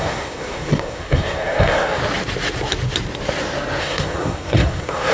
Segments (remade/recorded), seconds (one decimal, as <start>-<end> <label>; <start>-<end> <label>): 0.0-2.0 remade; 2.0-3.8 recorded; 3.8-5.1 remade